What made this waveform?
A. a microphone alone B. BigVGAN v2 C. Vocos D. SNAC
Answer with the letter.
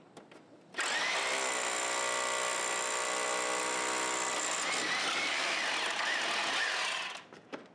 A